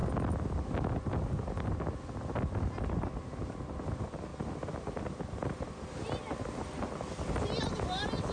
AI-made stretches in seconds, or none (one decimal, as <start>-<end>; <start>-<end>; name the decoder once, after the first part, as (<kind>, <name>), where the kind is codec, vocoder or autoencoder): none